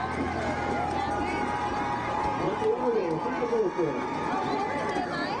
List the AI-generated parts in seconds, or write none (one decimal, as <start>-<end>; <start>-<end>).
none